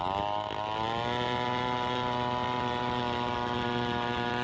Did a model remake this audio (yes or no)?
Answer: no